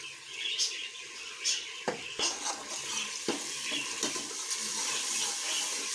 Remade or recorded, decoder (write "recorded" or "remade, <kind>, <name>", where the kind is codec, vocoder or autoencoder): recorded